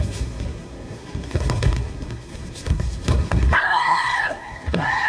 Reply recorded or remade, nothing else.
remade